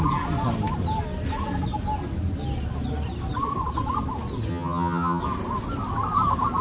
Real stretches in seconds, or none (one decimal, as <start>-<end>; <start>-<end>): 0.0-4.5; 5.2-6.6

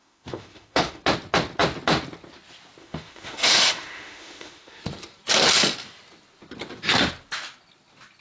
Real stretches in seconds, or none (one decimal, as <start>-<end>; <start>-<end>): 1.0-2.8; 4.8-8.2